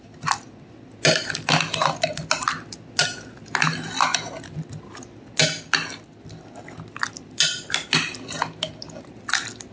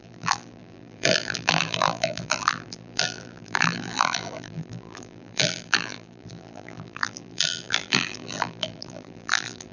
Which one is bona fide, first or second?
first